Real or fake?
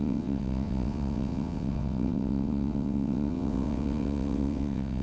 fake